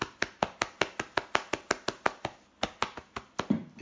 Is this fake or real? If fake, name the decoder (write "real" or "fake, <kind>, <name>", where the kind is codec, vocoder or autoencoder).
real